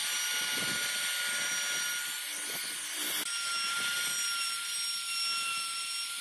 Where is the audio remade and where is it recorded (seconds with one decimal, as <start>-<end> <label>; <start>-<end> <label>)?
0.0-6.2 recorded